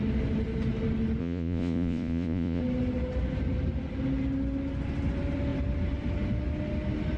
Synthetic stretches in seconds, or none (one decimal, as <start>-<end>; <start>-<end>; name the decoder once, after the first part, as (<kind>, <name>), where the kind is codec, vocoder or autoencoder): 1.2-2.6 (vocoder, Vocos)